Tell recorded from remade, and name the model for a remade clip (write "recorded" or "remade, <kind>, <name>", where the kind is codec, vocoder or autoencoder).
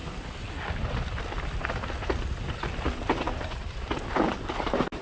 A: recorded